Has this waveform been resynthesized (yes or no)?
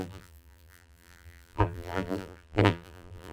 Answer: yes